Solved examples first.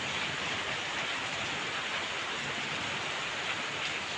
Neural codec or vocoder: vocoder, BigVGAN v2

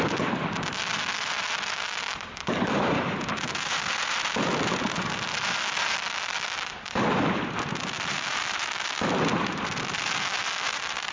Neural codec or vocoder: vocoder, BigVGAN v2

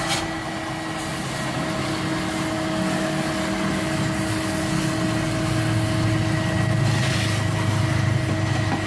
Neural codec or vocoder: none